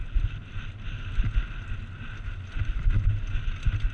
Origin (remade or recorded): recorded